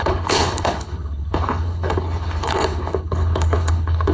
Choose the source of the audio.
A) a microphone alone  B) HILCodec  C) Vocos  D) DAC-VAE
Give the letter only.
B